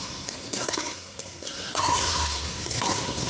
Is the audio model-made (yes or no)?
yes